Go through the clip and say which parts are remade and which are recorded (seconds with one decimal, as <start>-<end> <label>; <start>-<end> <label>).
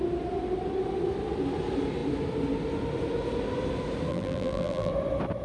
0.0-4.1 recorded; 4.1-4.9 remade; 4.9-5.4 recorded